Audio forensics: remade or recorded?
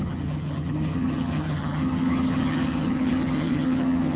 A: remade